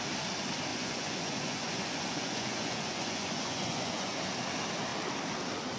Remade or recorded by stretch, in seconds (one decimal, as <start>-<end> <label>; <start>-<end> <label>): 0.0-0.7 recorded; 0.7-4.2 remade; 4.2-5.8 recorded